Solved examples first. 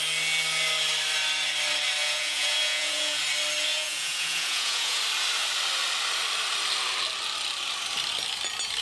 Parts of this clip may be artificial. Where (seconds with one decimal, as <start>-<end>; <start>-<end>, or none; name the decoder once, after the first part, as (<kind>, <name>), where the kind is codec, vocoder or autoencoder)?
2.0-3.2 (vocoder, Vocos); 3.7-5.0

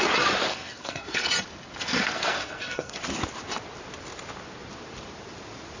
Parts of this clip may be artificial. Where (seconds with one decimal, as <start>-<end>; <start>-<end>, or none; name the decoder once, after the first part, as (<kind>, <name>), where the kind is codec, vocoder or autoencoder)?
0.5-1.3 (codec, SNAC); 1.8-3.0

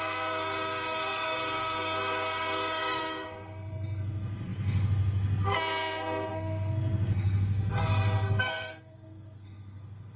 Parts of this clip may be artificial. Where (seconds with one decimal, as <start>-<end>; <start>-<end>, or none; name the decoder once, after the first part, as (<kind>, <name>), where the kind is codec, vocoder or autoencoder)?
0.0-10.2 (codec, SNAC)